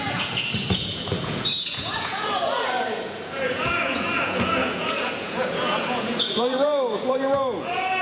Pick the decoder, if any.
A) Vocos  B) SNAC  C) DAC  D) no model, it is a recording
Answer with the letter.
A